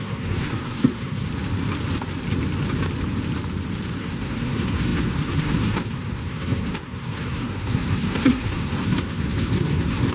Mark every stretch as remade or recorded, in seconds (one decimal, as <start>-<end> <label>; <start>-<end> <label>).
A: 0.0-1.3 remade; 1.3-4.0 recorded; 4.0-10.1 remade